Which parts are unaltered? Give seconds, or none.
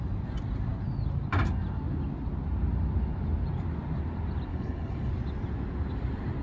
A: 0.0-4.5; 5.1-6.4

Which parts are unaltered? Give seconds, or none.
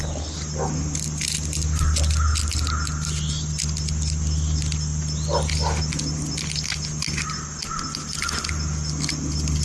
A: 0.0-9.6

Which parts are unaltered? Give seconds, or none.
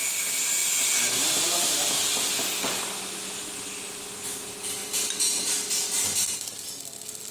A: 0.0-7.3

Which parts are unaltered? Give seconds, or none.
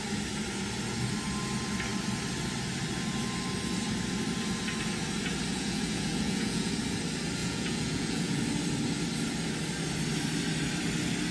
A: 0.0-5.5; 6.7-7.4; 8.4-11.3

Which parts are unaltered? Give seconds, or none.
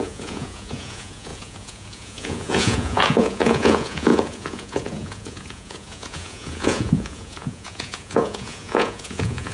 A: none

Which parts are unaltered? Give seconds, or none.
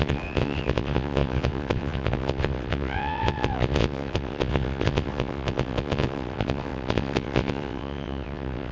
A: none